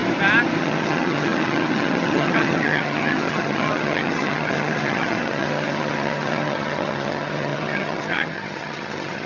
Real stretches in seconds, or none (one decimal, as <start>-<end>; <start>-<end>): 0.0-0.6